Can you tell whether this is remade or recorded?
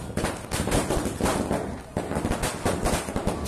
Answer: recorded